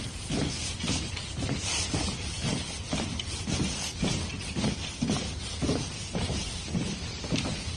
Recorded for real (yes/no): no